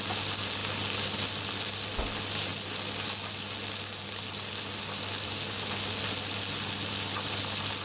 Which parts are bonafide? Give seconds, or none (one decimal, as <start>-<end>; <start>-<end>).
0.0-7.8